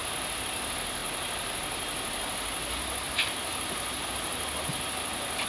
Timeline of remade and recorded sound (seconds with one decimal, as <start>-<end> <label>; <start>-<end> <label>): 0.0-5.5 recorded